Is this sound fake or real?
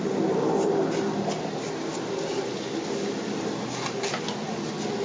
real